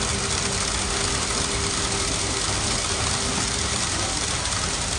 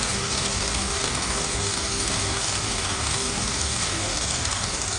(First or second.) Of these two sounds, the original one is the first